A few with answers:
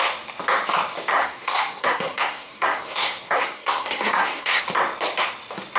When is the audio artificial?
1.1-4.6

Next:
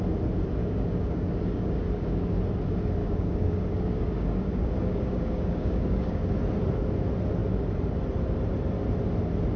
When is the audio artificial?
0.6-2.4; 3.0-6.3